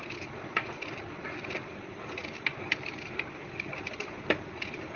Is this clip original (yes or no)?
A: yes